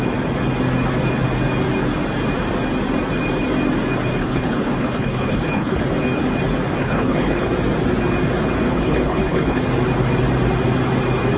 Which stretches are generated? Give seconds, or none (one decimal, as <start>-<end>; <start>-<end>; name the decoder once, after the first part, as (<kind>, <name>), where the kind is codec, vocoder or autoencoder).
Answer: 4.2-5.8 (codec, HILCodec); 6.8-7.5; 8.7-9.6

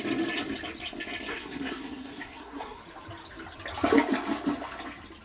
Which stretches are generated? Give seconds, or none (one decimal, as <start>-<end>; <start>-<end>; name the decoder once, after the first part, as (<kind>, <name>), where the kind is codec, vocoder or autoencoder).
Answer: 1.3-2.8 (codec, SNAC)

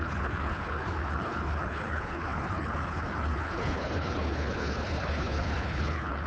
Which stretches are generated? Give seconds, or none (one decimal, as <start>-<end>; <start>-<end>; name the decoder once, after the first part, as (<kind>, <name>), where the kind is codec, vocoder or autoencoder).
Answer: 0.0-6.3 (codec, HILCodec)

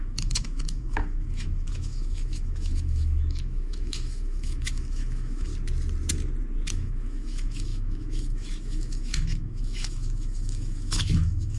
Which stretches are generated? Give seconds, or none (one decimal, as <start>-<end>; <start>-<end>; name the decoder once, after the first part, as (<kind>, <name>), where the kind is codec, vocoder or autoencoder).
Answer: 0.0-5.5 (autoencoder, DAC-VAE); 6.7-11.6

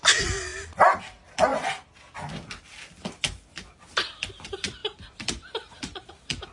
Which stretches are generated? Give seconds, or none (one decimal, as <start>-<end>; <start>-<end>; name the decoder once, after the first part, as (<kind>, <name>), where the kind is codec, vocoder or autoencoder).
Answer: 0.0-0.5 (vocoder, BigVGAN v2); 1.0-6.5

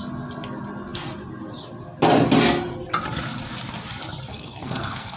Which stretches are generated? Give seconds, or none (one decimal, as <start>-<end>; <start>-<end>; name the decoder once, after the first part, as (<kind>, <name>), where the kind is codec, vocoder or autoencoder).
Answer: 4.3-5.2 (codec, SNAC)

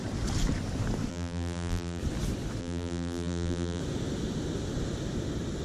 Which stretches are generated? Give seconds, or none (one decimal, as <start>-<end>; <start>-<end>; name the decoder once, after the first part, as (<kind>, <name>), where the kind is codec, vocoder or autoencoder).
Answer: 1.1-2.0 (vocoder, BigVGAN v2); 2.6-3.8